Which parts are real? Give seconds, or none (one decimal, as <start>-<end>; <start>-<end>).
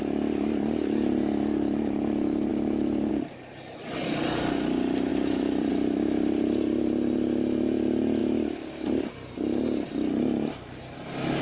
0.0-5.1; 5.7-11.4